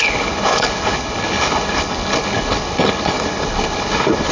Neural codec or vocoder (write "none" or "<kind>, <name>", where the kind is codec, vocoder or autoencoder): codec, HILCodec